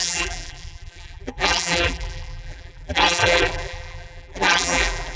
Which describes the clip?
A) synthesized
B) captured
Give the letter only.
A